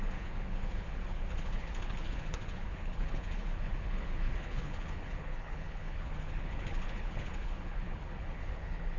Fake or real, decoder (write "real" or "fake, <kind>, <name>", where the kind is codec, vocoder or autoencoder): fake, codec, HILCodec